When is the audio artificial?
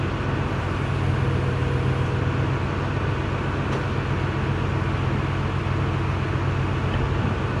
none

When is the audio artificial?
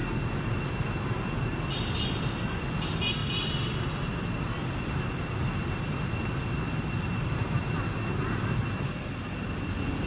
none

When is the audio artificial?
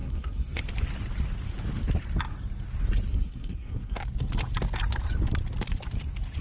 0.0-0.6 (codec, SNAC); 3.1-4.0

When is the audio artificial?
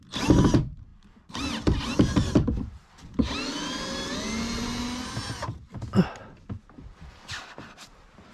none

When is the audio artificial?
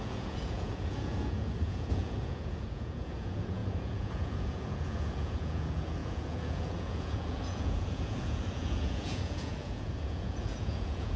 0.0-11.2 (vocoder, Vocos)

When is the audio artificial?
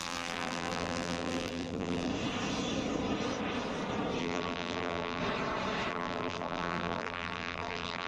0.0-2.1 (vocoder, BigVGAN v2); 4.2-5.2; 5.9-8.1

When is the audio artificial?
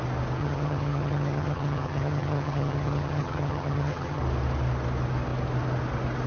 0.4-4.2 (vocoder, HiFi-GAN)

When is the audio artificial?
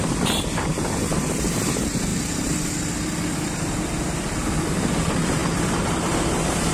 0.0-2.1 (vocoder, BigVGAN v2); 4.6-6.7